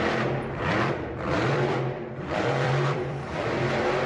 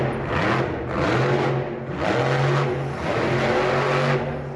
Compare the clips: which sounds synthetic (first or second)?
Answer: first